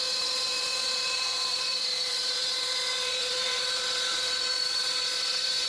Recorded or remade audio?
remade